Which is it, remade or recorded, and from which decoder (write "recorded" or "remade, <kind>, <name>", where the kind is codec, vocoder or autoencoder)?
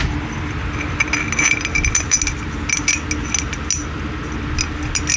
recorded